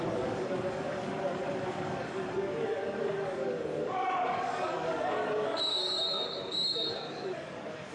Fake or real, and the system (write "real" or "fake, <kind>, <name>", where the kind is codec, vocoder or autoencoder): fake, codec, DAC